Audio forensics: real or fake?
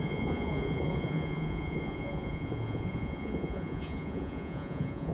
fake